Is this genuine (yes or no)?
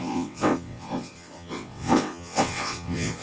no